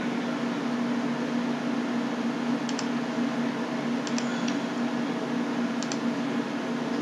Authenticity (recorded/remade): recorded